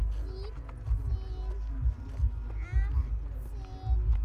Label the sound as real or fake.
real